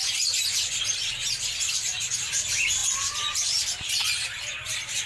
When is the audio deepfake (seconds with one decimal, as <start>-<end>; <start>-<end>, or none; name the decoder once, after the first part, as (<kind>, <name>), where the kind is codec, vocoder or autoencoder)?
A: 1.2-2.1 (vocoder, BigVGAN v2); 2.8-5.1